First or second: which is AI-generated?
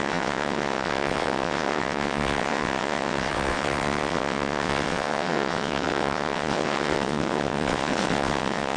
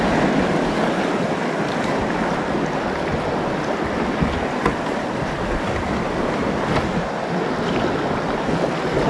first